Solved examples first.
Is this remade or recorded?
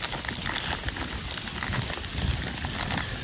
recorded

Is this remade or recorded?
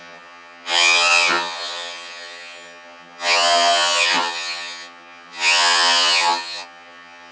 remade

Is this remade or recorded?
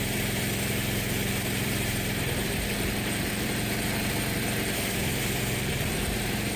remade